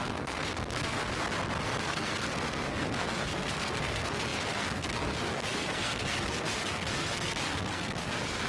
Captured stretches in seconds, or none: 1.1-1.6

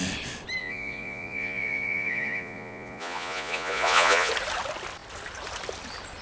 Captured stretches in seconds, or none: 0.0-0.6; 4.3-6.2

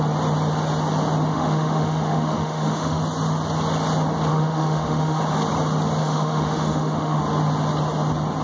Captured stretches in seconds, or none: 0.0-1.3; 3.0-4.3; 5.2-6.0; 7.2-8.4

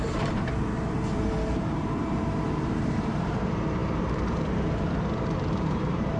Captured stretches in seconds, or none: none

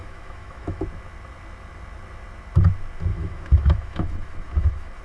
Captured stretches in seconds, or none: 0.8-3.1

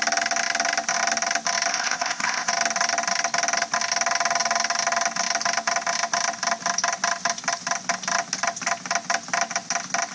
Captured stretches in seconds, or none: 0.0-1.7; 2.5-10.1

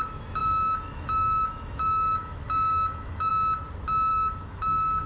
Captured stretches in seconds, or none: 0.0-0.4; 3.3-4.1

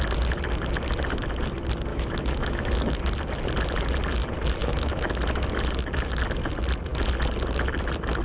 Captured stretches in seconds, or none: 0.0-1.9; 3.0-4.6; 5.1-8.2